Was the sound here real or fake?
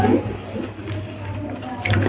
real